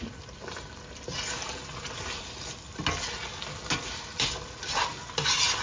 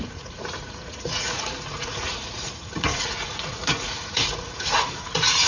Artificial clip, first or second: second